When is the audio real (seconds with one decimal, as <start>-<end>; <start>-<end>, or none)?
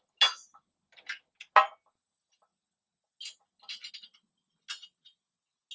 0.0-5.7